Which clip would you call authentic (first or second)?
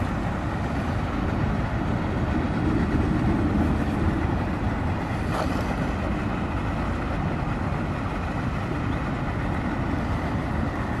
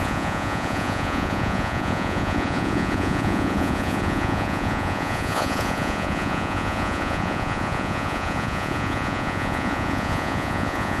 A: first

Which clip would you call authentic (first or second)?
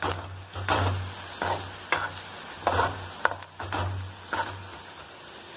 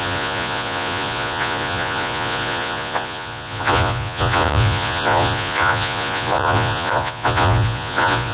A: first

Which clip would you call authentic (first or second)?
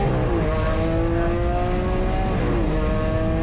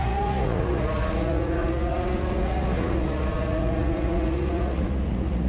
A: first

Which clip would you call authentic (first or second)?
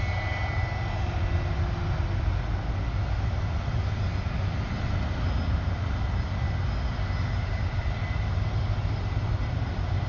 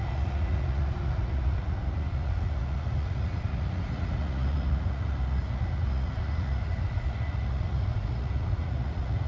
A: first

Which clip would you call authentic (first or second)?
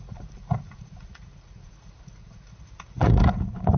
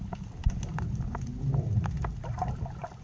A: second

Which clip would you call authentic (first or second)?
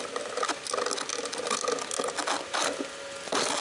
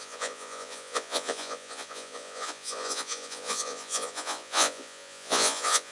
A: first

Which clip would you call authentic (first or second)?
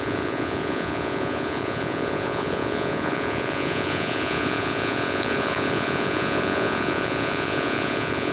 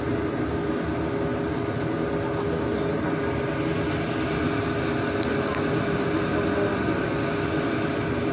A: second